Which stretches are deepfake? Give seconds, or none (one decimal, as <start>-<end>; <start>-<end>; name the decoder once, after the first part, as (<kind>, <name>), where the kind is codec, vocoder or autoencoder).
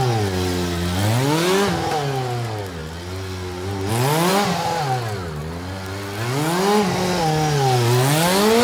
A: none